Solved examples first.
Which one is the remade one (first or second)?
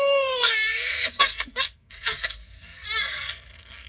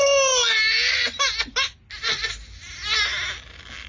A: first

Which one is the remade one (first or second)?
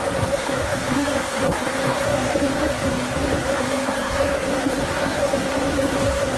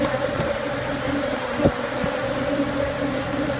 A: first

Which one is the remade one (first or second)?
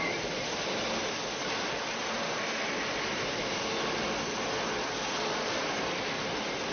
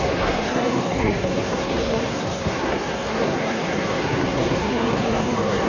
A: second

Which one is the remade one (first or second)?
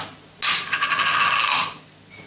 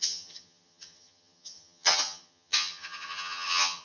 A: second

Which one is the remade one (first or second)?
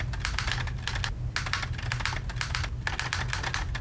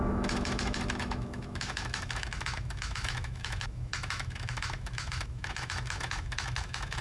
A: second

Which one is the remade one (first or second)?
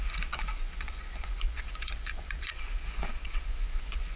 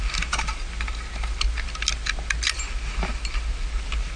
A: first